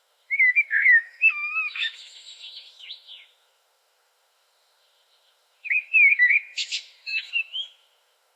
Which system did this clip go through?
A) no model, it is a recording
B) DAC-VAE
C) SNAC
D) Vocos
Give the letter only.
B